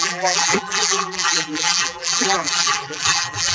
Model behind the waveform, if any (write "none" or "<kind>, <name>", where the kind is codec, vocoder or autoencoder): vocoder, BigVGAN v2